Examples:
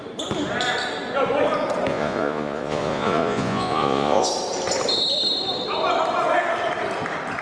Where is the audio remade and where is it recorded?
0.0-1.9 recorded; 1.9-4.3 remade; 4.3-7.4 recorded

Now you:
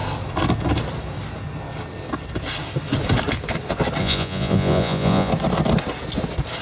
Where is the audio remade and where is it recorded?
0.0-4.0 recorded; 4.0-5.3 remade; 5.3-6.6 recorded

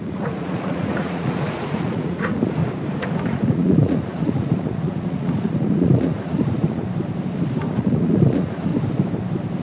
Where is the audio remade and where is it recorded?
0.0-2.6 remade; 2.6-3.3 recorded; 3.3-6.8 remade; 6.8-7.7 recorded; 7.7-8.7 remade; 8.7-9.6 recorded

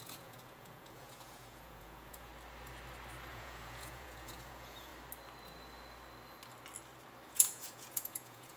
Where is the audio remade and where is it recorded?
0.0-2.3 remade; 2.3-3.3 recorded; 3.3-4.9 remade; 4.9-7.3 recorded; 7.3-8.6 remade

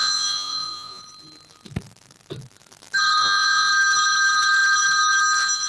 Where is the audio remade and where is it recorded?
0.0-1.0 remade; 1.0-3.2 recorded; 3.2-3.7 remade; 3.7-5.7 recorded

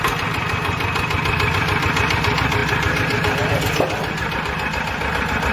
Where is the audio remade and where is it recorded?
0.0-5.5 recorded

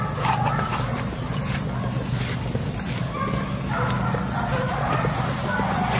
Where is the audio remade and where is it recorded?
0.0-6.0 recorded